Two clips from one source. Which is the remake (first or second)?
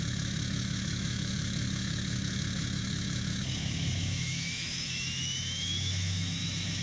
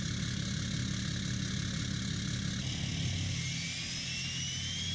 first